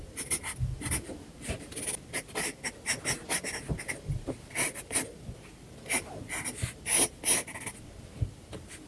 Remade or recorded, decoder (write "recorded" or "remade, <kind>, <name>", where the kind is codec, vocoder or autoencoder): recorded